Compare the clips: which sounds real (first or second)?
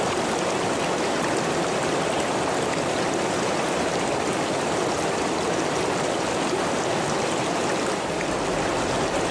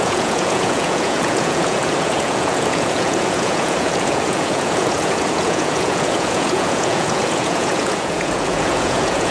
first